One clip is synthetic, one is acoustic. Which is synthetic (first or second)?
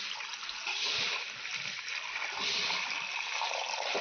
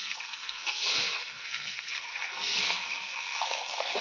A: second